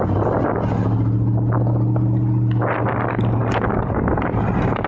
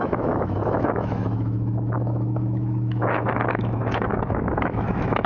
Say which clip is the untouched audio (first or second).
first